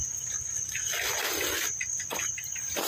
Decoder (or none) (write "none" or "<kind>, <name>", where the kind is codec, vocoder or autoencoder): none